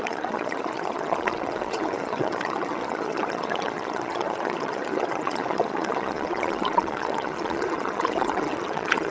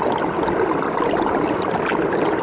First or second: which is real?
second